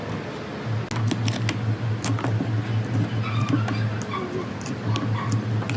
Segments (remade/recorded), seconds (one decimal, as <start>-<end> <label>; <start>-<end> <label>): 0.0-5.8 recorded